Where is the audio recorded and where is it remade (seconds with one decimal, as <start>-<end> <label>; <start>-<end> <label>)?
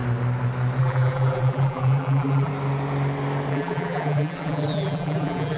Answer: 0.0-0.8 recorded; 0.8-2.5 remade; 2.5-3.5 recorded; 3.5-5.6 remade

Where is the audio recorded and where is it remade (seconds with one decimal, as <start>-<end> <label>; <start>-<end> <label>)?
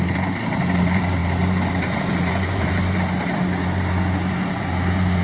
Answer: 0.0-5.2 remade